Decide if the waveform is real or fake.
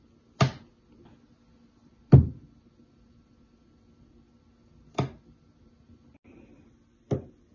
real